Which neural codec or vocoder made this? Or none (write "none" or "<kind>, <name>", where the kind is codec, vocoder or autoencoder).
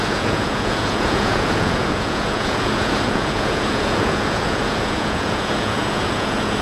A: vocoder, Vocos